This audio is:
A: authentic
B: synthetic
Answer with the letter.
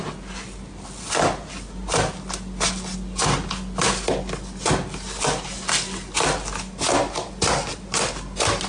A